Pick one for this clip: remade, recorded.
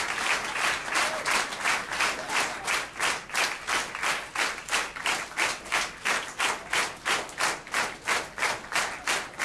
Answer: recorded